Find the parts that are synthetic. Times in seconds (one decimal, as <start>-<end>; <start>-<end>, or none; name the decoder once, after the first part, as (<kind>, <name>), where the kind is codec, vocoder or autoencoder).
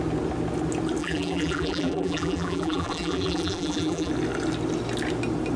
1.0-4.1 (vocoder, BigVGAN v2)